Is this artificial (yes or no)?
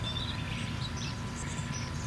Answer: no